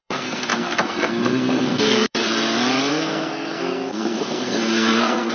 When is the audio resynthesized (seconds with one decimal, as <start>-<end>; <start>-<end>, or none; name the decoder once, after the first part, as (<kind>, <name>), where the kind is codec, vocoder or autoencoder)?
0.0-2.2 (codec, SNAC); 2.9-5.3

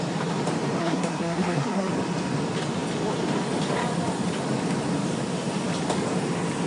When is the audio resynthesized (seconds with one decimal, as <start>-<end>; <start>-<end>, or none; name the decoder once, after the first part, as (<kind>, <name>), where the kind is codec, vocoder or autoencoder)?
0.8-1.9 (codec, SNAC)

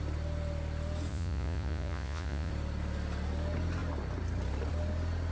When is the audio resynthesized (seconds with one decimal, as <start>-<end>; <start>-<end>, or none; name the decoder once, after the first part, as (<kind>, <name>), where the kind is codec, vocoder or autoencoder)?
1.1-2.5 (vocoder, Vocos)